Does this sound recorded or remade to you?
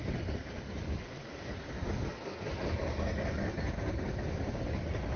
recorded